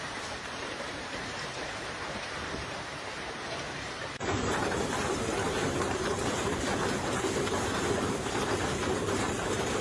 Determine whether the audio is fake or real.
fake